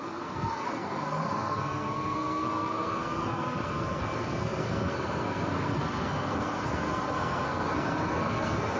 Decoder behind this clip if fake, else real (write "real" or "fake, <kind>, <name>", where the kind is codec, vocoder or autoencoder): fake, codec, SNAC